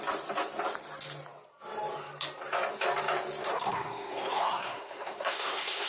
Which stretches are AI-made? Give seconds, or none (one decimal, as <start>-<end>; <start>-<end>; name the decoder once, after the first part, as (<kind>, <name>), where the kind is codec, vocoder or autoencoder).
3.5-5.9 (codec, SNAC)